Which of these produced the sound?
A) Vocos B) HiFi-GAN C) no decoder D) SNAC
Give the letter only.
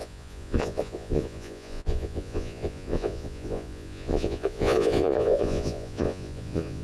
A